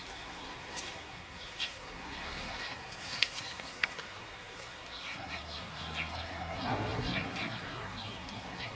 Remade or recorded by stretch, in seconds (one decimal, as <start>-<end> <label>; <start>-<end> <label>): 0.0-8.8 remade